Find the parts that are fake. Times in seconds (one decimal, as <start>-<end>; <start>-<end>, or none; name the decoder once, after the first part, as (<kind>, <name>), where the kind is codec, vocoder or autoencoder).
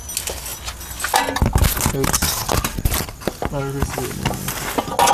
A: none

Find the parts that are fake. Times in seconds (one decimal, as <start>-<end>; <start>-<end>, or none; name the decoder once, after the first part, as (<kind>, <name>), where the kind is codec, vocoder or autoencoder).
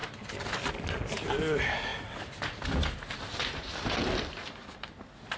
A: none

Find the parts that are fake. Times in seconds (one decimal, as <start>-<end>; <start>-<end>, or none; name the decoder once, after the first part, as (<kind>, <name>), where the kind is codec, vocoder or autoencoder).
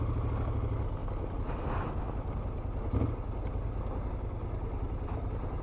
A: none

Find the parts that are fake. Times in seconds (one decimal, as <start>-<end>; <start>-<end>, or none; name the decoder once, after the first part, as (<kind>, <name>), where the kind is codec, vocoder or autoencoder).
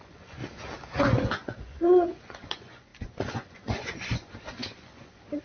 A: 0.0-0.4 (vocoder, Vocos); 1.0-5.4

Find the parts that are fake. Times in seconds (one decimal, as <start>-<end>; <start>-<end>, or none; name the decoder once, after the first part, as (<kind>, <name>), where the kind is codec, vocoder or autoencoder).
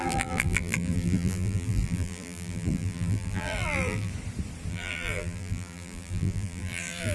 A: 0.0-4.1 (vocoder, BigVGAN v2); 4.7-7.1